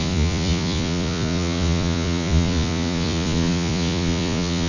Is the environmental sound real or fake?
fake